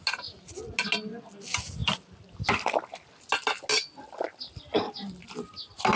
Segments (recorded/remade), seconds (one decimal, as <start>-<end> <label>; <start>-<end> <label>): 0.0-6.0 recorded

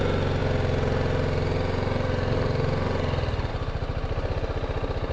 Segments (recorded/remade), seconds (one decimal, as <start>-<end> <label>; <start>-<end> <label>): 0.0-5.1 recorded

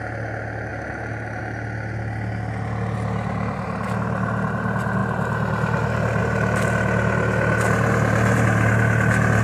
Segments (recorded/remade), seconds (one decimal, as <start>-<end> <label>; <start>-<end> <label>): 0.0-5.0 recorded; 5.0-6.2 remade; 6.2-9.4 recorded

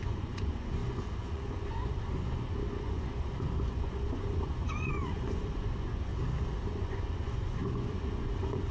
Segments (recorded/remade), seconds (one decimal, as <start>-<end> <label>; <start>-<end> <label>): 0.0-6.1 remade; 6.1-6.7 recorded; 6.7-8.7 remade

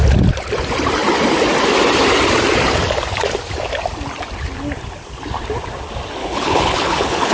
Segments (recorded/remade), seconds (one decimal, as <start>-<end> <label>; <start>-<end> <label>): 0.0-6.2 recorded; 6.2-7.3 remade